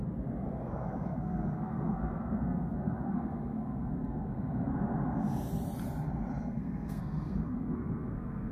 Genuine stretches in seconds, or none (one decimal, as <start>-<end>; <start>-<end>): 0.0-0.6; 4.7-6.4